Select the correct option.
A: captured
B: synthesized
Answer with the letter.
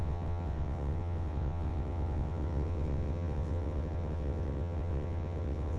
B